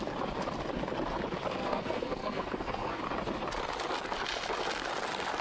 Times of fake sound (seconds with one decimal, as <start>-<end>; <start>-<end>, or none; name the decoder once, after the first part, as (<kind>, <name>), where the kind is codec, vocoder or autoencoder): 1.6-3.0 (codec, SNAC)